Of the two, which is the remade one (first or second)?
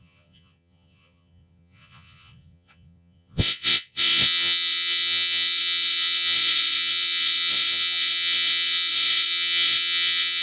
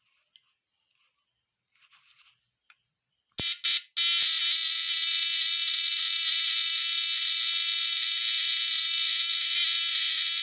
first